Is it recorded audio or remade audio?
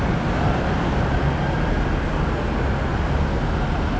recorded